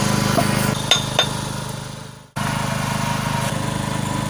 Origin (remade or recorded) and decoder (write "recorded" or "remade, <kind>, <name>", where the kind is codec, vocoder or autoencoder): recorded